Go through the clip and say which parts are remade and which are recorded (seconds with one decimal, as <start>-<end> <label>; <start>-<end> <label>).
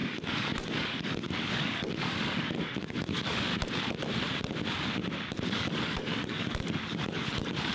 0.0-3.5 remade; 3.5-5.5 recorded; 5.5-7.7 remade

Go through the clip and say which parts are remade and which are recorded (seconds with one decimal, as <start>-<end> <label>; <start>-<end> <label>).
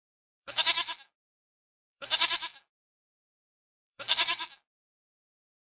0.0-5.8 remade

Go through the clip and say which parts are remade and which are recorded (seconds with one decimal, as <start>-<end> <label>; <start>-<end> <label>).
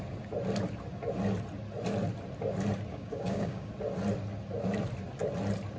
0.0-2.9 recorded; 2.9-3.7 remade; 3.7-5.8 recorded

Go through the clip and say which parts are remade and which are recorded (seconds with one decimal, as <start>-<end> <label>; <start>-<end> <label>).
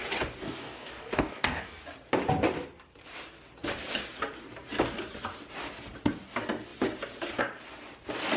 0.0-0.4 recorded; 0.4-1.8 remade; 1.8-8.4 recorded